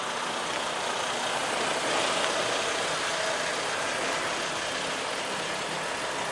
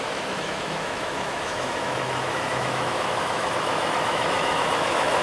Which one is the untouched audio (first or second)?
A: first